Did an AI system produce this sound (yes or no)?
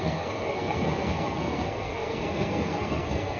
yes